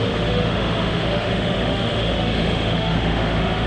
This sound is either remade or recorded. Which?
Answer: remade